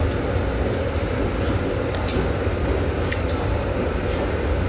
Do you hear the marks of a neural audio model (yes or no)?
no